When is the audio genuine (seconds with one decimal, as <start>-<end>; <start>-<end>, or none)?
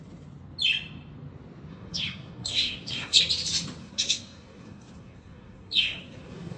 0.0-1.7; 3.2-3.8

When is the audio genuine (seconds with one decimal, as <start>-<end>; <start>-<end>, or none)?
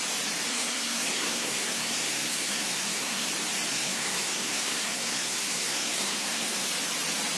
0.0-0.5; 3.3-3.7; 6.7-7.4